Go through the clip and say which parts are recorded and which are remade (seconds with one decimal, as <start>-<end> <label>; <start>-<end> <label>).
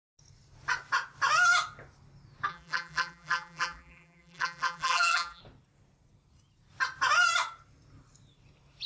0.0-2.5 recorded; 2.5-5.4 remade; 5.4-8.9 recorded